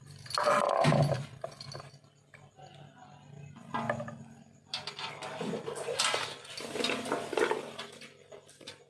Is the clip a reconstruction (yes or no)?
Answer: no